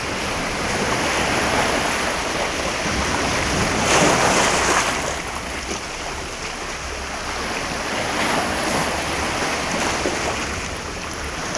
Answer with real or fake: real